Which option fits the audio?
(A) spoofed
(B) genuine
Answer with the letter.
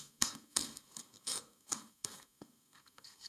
A